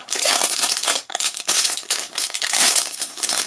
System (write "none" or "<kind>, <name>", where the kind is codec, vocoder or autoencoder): codec, SNAC